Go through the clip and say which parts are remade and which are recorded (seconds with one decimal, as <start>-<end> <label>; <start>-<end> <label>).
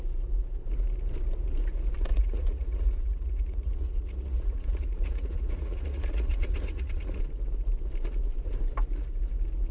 0.0-2.1 recorded; 2.1-7.2 remade; 7.2-9.7 recorded